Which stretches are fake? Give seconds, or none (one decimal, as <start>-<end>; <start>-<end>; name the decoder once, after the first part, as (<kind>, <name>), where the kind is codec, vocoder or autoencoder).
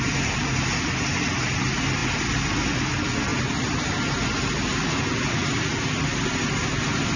none